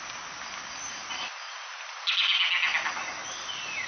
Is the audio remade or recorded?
recorded